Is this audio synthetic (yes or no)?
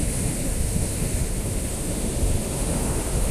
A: yes